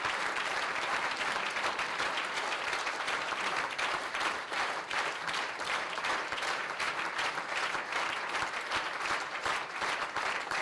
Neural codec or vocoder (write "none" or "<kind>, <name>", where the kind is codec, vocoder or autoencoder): vocoder, BigVGAN v2